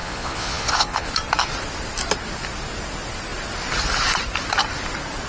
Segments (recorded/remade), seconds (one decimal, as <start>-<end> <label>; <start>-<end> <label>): 0.0-1.1 remade; 1.1-5.3 recorded